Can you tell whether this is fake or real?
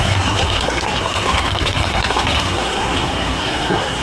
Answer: fake